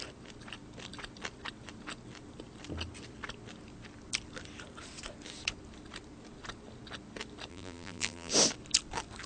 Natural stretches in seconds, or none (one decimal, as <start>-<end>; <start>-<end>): 0.0-7.5; 8.3-9.3

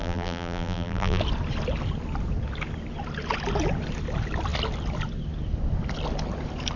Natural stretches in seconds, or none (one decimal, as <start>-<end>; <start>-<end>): 1.2-6.8

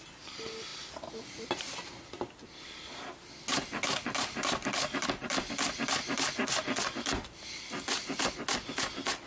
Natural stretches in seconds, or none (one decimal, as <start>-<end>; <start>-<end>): 0.0-4.6; 5.5-9.3

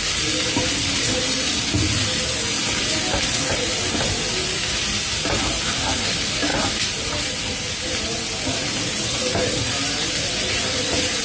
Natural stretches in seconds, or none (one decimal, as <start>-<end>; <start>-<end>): 0.0-6.5; 7.7-11.2

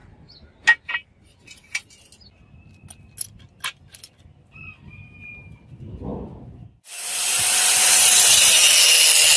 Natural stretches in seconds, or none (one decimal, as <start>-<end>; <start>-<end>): 0.0-9.4

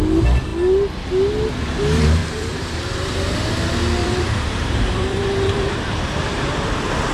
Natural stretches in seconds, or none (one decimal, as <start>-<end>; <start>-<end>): 0.0-2.2; 3.5-4.0

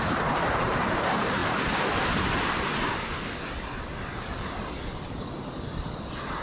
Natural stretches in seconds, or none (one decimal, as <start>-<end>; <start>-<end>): 1.4-5.2

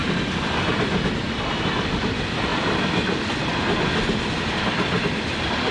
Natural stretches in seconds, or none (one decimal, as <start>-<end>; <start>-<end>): 0.0-2.0